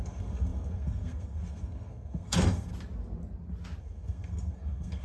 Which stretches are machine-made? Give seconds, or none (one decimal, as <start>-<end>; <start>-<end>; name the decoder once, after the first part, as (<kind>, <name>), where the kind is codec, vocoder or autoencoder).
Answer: 0.0-2.7 (codec, SNAC); 3.8-5.0